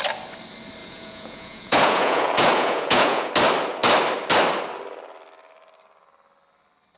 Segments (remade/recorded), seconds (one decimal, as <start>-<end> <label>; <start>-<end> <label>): 0.0-0.8 recorded; 0.8-3.3 remade; 3.3-7.0 recorded